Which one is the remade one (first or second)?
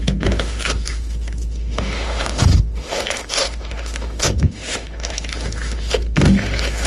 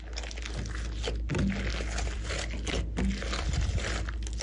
first